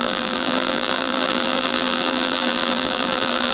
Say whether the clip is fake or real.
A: fake